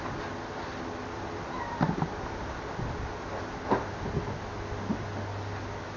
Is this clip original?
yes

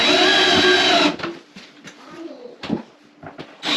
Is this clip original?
yes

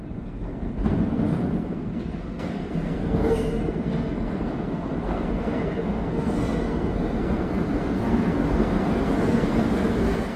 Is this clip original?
no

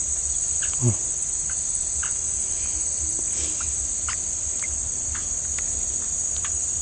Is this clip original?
yes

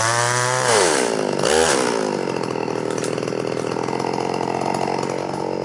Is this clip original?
yes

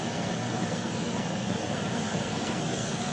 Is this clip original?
no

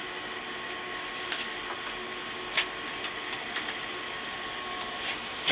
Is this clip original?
yes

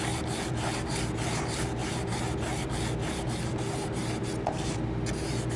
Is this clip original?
yes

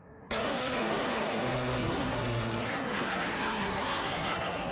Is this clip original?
no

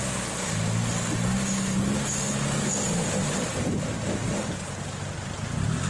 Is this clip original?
yes